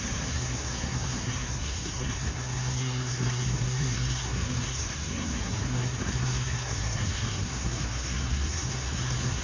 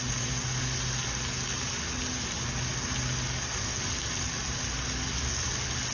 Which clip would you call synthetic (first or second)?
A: first